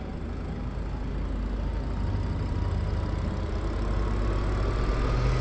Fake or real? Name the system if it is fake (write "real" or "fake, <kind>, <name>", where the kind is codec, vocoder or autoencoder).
real